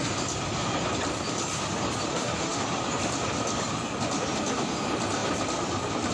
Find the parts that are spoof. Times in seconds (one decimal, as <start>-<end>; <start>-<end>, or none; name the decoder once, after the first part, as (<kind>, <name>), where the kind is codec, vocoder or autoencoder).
2.1-2.6 (autoencoder, DAC-VAE)